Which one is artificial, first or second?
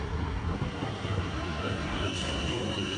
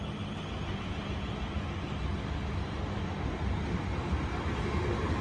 first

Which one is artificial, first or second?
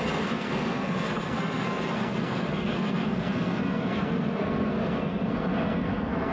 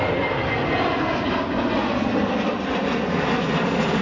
first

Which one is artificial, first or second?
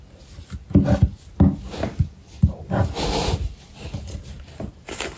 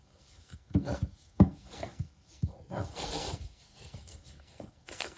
second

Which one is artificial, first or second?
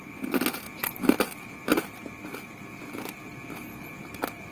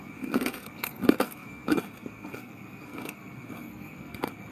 second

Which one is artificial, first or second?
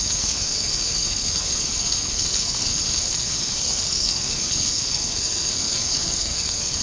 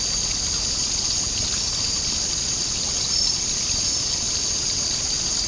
first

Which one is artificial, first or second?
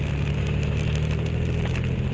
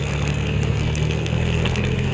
second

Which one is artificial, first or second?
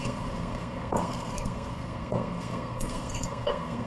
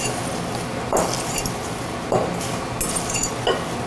first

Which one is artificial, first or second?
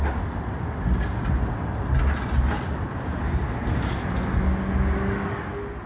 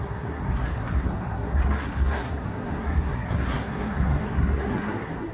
second